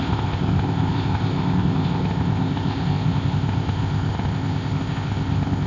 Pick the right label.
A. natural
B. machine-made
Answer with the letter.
B